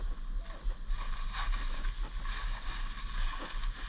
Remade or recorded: recorded